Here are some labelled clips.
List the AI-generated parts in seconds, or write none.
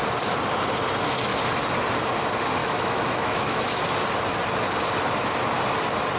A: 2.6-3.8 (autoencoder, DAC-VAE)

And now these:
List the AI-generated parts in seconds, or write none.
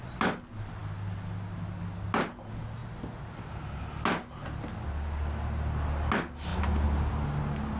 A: none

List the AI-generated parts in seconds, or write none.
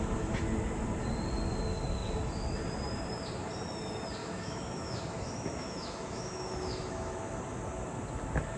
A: 4.2-7.4 (autoencoder, DAC-VAE)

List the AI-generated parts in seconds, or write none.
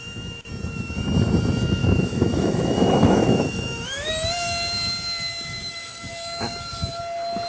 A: 1.8-4.1 (autoencoder, DAC-VAE); 5.3-7.0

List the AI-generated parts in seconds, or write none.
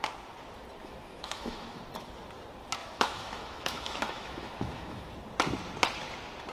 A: 0.8-1.8 (autoencoder, DAC-VAE); 2.8-5.1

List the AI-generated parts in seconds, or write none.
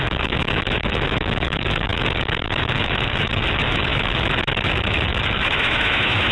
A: 0.0-6.3 (autoencoder, DAC-VAE)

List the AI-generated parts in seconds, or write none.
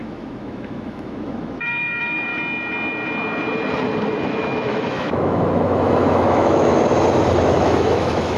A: 0.0-2.3 (autoencoder, DAC-VAE); 4.2-6.7; 7.5-8.4